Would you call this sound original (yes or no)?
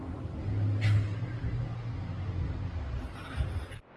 yes